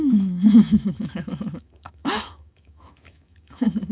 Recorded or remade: remade